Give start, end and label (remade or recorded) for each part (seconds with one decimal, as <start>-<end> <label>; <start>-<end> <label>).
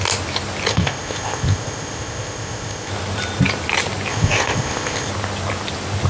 0.0-0.7 recorded; 0.7-2.9 remade; 2.9-4.1 recorded; 4.1-5.1 remade; 5.1-6.1 recorded